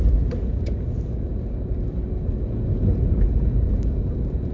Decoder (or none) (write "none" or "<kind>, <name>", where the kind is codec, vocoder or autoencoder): none